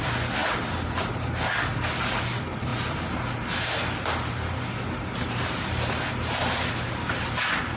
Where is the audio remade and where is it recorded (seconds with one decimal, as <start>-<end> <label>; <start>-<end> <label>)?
0.0-7.8 recorded